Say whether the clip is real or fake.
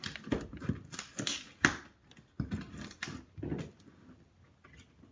real